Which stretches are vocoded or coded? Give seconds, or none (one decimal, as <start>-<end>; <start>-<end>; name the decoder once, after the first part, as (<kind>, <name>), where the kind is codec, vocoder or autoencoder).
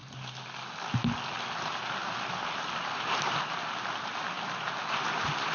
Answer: none